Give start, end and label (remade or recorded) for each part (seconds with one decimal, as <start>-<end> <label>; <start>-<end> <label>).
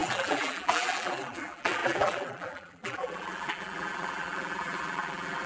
0.0-5.5 remade